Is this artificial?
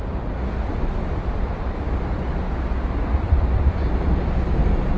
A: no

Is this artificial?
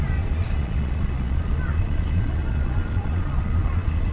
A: yes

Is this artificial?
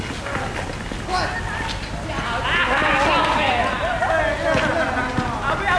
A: no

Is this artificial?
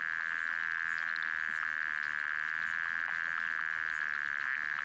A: no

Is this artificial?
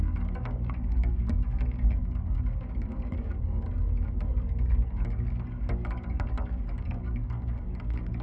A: yes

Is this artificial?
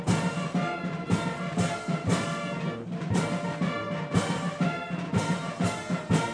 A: no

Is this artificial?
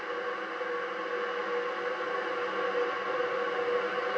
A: no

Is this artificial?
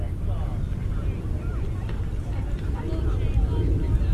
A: no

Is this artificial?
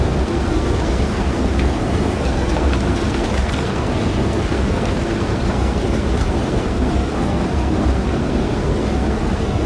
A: yes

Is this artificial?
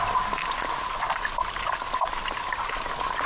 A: no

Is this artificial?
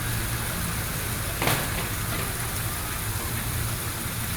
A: no